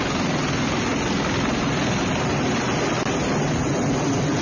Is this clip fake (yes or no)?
no